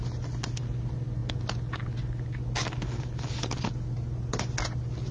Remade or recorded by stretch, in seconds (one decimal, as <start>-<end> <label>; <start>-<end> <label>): 0.0-5.1 recorded